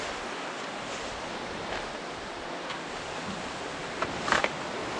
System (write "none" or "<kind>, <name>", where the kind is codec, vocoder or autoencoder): none